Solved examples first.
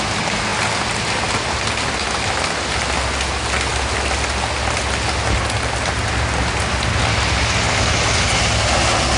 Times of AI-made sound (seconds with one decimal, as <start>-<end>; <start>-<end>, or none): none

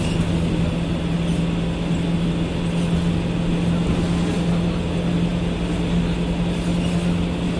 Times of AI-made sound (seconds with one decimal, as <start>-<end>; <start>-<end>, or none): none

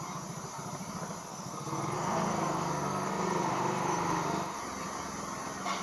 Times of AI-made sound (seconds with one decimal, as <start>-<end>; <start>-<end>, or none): 1.3-4.6